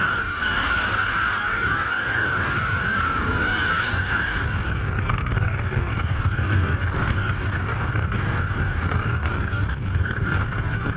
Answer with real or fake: fake